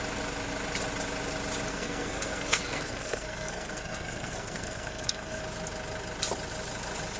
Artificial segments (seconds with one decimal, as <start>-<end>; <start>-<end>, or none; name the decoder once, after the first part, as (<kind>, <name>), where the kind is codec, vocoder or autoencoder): 1.7-5.4 (codec, SNAC)

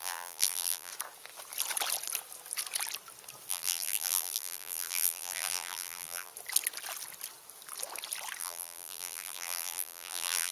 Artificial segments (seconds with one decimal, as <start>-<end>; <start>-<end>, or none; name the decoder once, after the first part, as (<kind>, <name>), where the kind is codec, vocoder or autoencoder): 0.0-0.9 (vocoder, BigVGAN v2); 3.5-6.3; 8.4-10.5

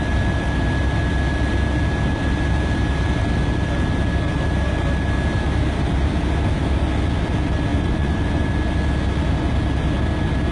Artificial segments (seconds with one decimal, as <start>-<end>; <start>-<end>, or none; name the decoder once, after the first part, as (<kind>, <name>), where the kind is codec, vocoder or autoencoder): 7.7-8.4 (vocoder, Vocos)

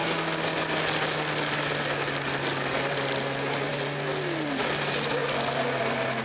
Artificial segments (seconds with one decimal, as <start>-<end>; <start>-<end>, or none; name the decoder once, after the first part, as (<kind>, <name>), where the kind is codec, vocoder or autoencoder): none

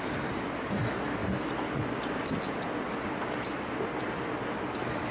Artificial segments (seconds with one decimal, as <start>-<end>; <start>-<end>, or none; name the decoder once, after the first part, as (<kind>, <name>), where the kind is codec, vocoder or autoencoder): none

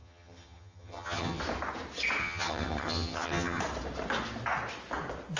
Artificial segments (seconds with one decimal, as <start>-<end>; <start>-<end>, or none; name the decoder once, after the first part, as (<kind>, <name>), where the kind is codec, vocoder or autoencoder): 0.0-1.4 (vocoder, HiFi-GAN); 2.2-3.6